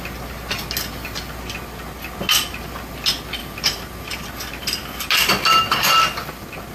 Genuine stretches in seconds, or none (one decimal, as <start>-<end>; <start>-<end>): 0.0-3.4; 4.2-6.7